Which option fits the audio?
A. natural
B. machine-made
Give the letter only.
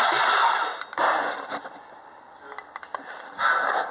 A